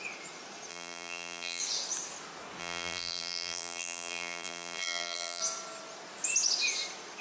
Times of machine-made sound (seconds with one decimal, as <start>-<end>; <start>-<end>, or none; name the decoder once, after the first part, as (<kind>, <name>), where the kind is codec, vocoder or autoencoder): 0.7-1.6 (vocoder, BigVGAN v2); 2.6-5.4